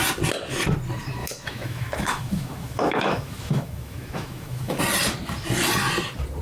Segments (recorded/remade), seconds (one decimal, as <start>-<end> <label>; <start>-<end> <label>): 0.0-1.2 recorded; 1.2-4.8 remade; 4.8-6.4 recorded